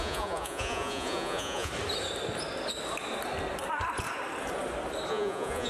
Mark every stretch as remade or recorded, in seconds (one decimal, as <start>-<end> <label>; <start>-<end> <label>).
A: 0.0-1.7 remade; 1.7-5.1 recorded; 5.1-5.7 remade